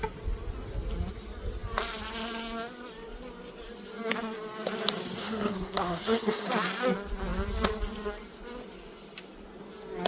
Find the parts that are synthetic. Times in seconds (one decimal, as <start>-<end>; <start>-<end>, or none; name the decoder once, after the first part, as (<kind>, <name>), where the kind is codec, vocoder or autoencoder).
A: 5.2-6.5 (codec, SNAC)